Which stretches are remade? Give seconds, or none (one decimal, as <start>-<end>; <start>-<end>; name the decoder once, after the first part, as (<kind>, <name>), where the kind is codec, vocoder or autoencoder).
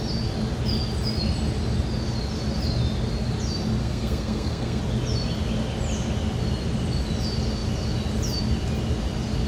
3.8-4.8 (codec, SNAC)